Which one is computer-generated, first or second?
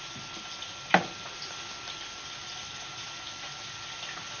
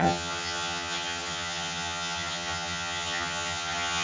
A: second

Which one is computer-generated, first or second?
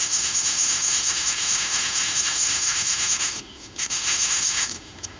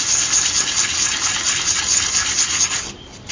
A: first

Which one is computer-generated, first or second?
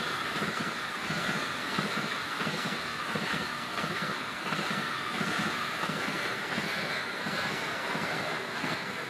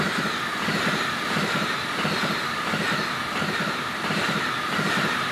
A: first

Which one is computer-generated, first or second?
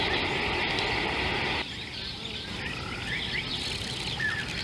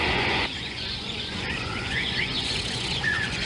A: second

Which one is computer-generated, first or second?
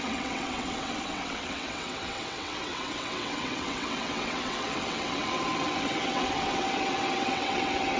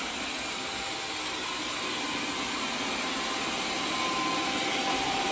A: first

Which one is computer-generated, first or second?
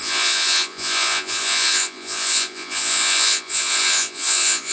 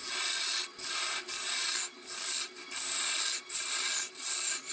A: first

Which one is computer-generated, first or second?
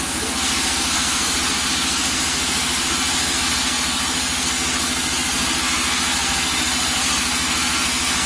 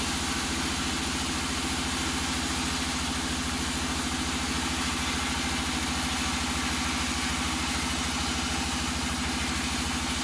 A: first